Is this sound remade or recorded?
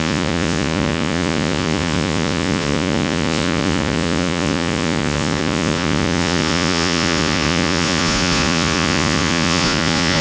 remade